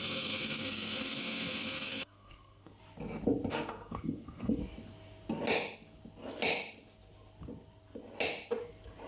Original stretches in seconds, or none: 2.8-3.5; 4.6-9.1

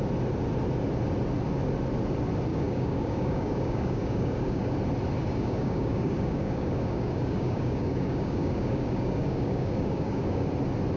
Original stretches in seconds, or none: 0.0-2.5; 4.7-5.2; 10.5-11.0

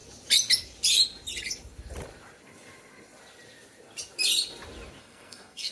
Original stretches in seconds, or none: 0.0-5.0

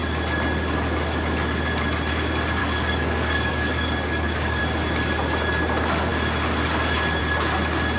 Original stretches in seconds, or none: 0.0-2.6; 4.6-8.0

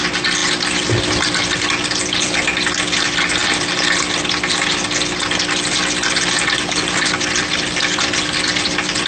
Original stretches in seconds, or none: 0.0-9.1

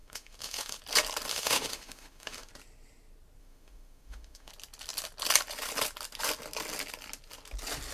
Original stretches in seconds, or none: 0.8-1.3; 2.5-3.4; 4.5-7.9

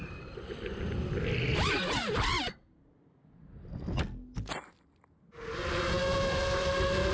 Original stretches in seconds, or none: 0.0-7.1

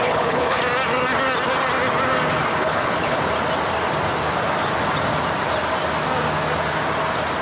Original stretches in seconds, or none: 0.6-2.5; 3.2-7.4